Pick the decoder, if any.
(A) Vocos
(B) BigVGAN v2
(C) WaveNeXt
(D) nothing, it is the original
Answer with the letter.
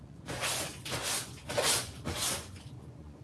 A